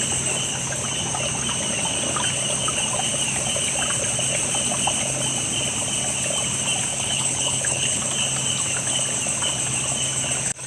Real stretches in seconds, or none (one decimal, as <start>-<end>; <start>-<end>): 0.0-6.9; 8.0-10.7